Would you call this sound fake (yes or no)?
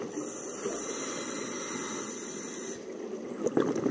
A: no